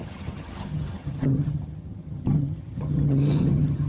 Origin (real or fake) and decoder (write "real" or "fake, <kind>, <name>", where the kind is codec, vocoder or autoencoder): fake, vocoder, HiFi-GAN